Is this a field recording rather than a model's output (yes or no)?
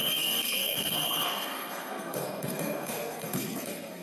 no